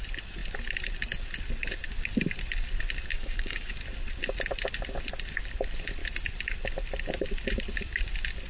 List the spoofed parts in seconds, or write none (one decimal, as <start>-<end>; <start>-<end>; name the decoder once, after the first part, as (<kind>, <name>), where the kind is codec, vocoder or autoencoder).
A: 3.1-3.7 (codec, DAC)